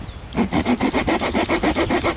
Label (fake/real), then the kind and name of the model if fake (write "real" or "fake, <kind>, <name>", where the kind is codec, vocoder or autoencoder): real